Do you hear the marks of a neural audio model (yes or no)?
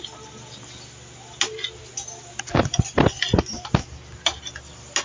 no